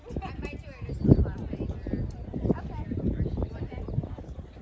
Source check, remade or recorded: recorded